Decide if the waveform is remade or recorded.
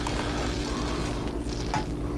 recorded